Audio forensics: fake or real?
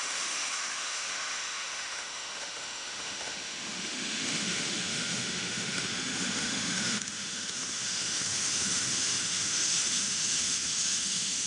fake